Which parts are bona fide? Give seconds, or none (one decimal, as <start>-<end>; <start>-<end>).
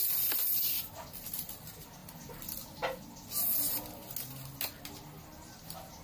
0.0-6.0